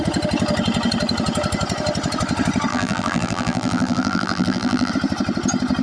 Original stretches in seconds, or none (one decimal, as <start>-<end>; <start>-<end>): 0.0-2.7; 4.9-5.8